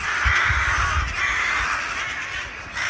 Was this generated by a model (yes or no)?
no